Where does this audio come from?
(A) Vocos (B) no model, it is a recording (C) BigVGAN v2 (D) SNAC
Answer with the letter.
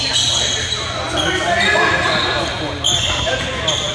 B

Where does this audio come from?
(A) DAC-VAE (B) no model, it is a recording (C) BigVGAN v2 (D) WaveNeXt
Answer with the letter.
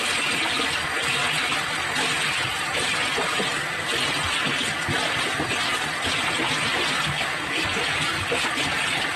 B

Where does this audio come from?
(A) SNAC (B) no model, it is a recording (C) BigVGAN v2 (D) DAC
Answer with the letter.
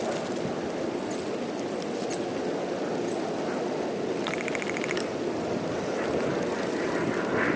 B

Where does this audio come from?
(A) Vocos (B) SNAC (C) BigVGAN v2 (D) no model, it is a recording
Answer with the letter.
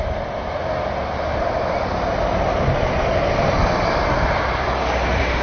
D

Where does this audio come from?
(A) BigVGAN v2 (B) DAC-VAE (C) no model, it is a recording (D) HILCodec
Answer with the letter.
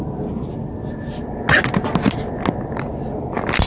C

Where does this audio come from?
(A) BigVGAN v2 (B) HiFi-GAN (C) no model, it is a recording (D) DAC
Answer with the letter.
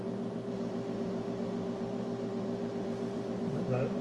A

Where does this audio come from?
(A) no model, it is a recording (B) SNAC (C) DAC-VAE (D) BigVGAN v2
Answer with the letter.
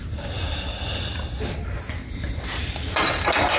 A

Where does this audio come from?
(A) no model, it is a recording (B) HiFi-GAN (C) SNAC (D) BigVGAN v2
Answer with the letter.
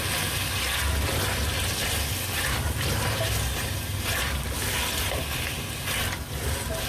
A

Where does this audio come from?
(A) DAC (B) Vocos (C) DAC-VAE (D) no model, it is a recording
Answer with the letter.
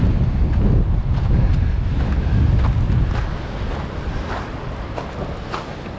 D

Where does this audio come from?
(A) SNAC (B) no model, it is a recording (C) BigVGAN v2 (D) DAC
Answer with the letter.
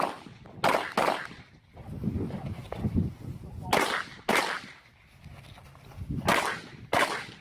B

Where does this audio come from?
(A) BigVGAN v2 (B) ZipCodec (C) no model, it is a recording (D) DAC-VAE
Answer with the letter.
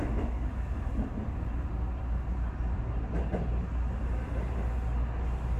C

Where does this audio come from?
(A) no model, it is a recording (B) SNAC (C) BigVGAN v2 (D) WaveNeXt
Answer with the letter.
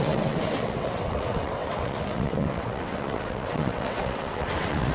D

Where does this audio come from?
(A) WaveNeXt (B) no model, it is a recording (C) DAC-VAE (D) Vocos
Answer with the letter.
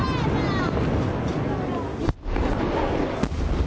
B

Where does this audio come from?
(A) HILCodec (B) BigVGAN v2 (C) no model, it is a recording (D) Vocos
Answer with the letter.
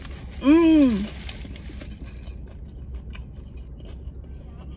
C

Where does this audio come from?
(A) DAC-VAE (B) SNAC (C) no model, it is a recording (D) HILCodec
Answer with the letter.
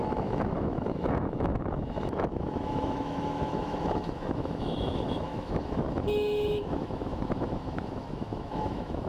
A